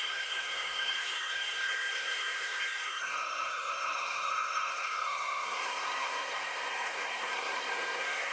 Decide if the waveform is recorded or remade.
remade